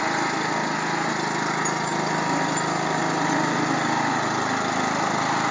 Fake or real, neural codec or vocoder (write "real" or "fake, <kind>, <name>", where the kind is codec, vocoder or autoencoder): real